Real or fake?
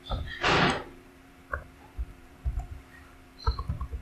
fake